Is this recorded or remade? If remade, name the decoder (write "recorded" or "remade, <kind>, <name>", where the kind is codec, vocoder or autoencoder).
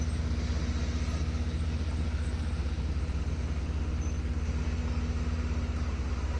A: recorded